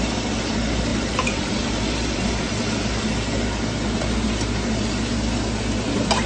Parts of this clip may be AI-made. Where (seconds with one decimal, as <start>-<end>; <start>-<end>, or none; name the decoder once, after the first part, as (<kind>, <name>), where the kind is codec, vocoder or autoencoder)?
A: 0.9-2.3 (vocoder, BigVGAN v2)